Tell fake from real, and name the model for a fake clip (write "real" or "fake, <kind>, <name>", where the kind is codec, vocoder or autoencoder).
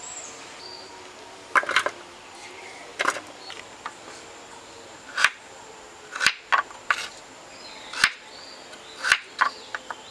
real